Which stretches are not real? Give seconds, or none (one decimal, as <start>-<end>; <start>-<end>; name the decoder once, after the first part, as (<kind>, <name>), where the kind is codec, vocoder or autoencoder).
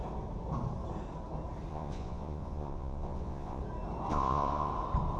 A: 1.7-3.6 (vocoder, Vocos); 4.1-4.7